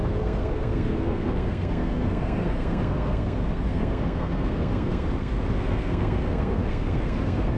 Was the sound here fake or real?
fake